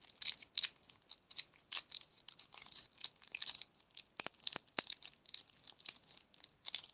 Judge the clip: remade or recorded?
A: recorded